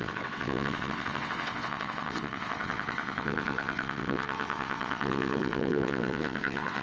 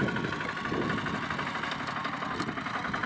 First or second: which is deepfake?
first